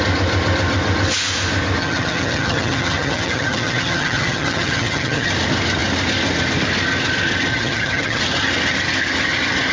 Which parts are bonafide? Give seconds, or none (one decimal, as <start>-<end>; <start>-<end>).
0.0-1.8; 5.3-7.5; 8.2-9.7

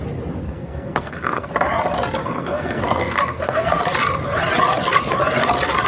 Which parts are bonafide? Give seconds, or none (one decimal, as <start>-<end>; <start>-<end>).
0.0-0.4; 1.5-2.2; 3.8-5.9

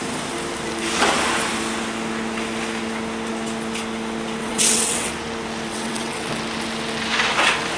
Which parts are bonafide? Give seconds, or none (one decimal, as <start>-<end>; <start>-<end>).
0.0-4.4; 5.1-5.7; 6.3-7.8

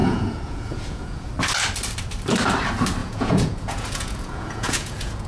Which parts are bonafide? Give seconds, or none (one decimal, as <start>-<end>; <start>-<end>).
1.3-3.0

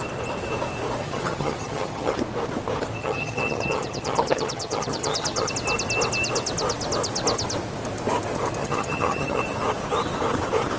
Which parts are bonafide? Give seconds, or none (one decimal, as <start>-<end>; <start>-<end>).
0.0-1.0; 2.1-3.0; 5.5-8.6; 9.4-10.8

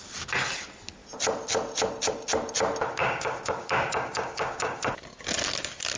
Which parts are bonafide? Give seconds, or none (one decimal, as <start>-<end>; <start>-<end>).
0.0-3.0; 4.8-6.0

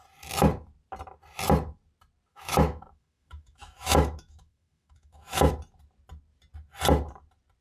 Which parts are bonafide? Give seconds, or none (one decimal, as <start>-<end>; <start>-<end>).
0.0-2.3; 5.5-7.6

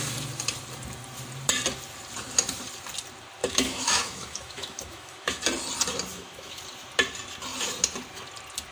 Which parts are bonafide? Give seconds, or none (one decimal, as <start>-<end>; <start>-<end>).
0.0-3.4; 5.4-6.1; 6.6-8.7